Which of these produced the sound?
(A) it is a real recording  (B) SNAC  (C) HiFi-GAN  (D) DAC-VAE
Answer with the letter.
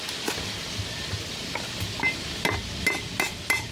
A